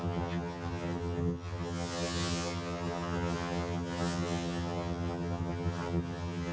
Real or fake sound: fake